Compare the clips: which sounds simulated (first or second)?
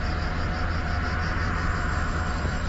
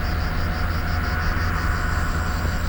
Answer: first